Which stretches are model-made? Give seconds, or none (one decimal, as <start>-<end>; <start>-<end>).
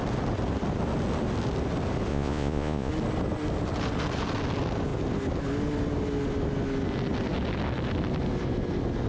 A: 2.1-2.9